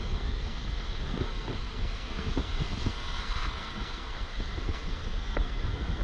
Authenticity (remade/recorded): remade